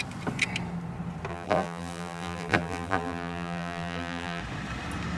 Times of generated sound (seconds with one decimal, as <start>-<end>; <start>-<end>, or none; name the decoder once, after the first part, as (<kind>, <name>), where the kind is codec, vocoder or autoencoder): 1.3-4.4 (vocoder, BigVGAN v2)